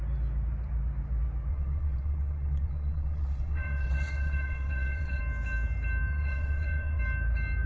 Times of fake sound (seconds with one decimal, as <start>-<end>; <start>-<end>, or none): 1.5-5.2; 6.1-7.0